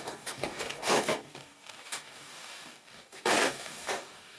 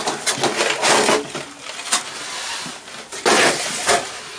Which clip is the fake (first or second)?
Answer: first